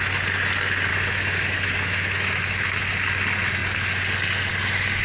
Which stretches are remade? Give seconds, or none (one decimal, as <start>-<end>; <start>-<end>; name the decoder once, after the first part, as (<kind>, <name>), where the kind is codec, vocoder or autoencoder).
0.9-2.8 (autoencoder, DAC-VAE)